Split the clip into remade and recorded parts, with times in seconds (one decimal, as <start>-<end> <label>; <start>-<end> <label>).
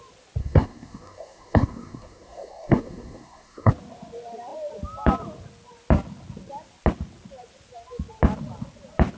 0.0-0.4 recorded; 0.4-3.7 remade; 3.7-9.2 recorded